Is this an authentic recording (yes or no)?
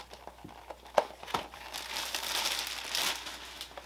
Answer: yes